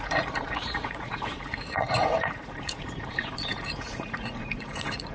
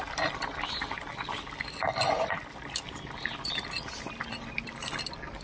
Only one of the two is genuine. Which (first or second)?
second